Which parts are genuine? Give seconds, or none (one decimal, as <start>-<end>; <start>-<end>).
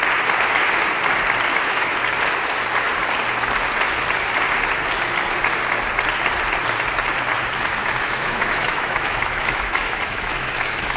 0.0-1.5; 2.0-7.8